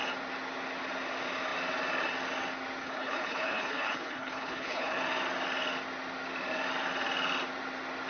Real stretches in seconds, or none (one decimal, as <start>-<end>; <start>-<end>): 0.0-2.8; 5.0-8.1